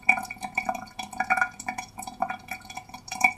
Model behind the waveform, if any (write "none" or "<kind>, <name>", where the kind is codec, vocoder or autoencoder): vocoder, Vocos